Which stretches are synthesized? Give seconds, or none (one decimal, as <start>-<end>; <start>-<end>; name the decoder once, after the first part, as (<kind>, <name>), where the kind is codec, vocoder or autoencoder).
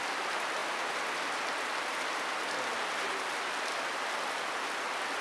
none